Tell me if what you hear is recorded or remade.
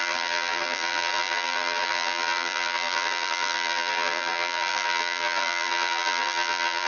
remade